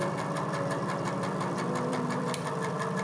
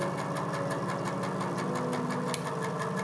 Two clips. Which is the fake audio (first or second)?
first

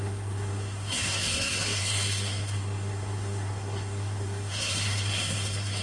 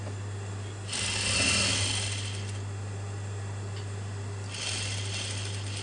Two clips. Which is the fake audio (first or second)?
first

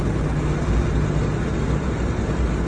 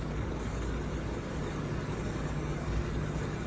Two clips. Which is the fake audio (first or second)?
second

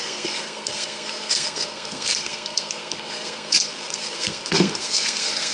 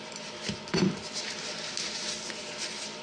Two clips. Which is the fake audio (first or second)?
first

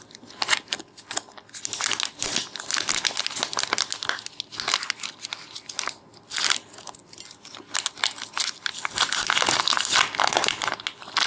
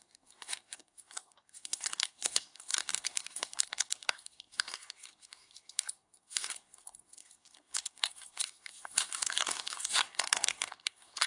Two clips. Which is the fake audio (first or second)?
second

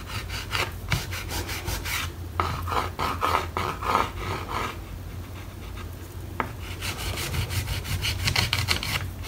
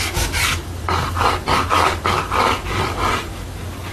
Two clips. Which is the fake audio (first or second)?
second